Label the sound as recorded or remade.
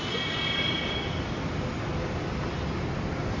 recorded